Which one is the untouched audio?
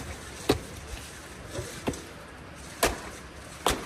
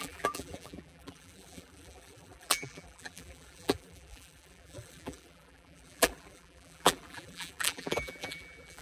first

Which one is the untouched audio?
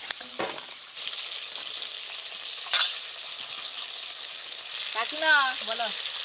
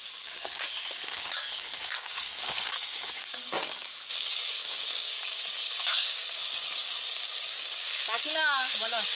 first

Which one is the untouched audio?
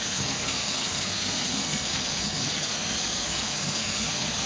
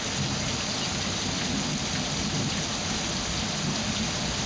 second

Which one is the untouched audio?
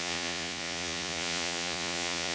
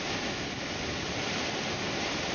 second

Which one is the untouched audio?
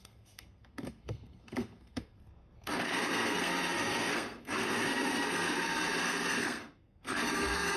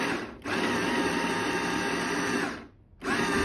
second